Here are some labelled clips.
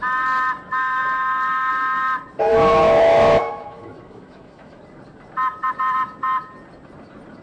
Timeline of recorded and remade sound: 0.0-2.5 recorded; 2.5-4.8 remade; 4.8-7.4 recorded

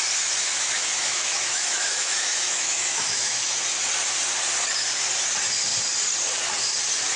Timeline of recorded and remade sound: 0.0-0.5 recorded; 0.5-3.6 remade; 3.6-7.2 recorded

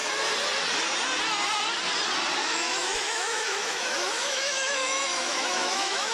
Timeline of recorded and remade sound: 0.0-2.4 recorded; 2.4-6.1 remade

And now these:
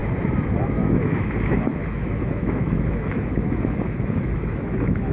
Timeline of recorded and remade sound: 0.0-0.6 recorded; 0.6-5.1 remade

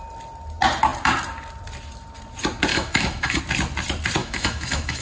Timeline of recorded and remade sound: 0.0-2.7 recorded; 2.7-3.4 remade; 3.4-4.2 recorded; 4.2-5.0 remade

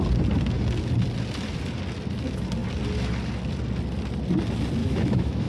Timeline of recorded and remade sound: 0.0-4.8 recorded; 4.8-5.5 remade